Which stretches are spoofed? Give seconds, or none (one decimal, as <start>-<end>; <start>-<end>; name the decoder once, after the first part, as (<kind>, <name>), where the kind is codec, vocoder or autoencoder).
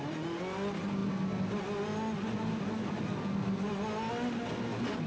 none